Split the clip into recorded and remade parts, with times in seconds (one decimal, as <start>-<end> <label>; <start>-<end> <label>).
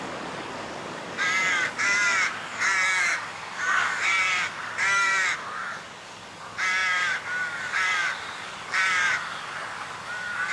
0.0-10.5 remade